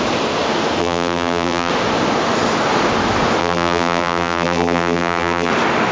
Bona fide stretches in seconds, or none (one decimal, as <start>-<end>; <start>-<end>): 0.0-0.8; 1.7-3.4; 5.5-5.9